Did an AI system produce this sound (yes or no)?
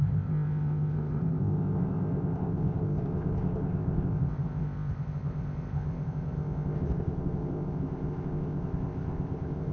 yes